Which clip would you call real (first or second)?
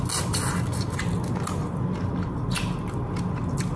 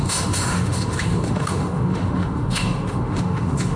first